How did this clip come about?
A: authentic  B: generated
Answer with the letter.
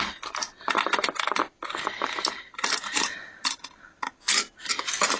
A